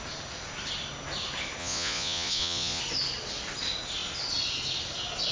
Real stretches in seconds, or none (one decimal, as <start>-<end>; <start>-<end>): 0.0-1.6; 2.8-5.3